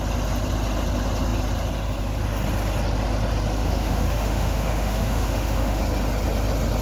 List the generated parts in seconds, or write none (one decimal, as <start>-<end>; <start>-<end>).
3.6-5.8